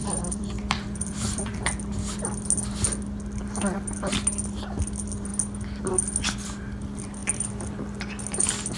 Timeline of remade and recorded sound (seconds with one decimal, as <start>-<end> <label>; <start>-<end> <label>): 0.0-1.7 remade; 1.7-7.2 recorded; 7.2-7.7 remade; 7.7-8.8 recorded

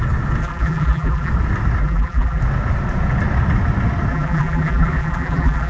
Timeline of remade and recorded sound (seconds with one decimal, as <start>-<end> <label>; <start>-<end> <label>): 0.0-0.4 recorded; 0.4-1.3 remade; 1.3-1.8 recorded; 1.8-2.4 remade; 2.4-4.1 recorded; 4.1-5.7 remade